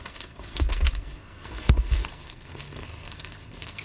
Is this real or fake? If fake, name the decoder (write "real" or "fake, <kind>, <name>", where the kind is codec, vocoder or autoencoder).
fake, codec, SNAC